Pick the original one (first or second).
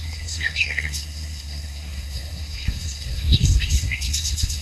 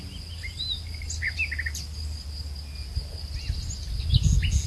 second